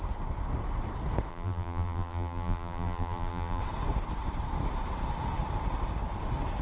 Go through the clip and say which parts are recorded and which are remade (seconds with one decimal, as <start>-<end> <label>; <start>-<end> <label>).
0.0-1.3 recorded; 1.3-3.6 remade; 3.6-6.6 recorded